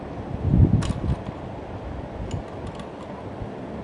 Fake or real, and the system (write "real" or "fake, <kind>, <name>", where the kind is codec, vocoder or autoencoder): real